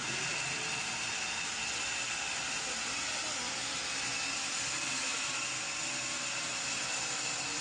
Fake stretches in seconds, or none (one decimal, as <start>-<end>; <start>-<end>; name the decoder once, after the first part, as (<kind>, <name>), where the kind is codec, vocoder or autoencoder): none